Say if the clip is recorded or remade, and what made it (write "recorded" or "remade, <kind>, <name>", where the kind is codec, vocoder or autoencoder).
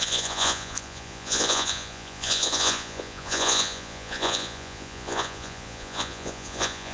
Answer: remade, vocoder, Vocos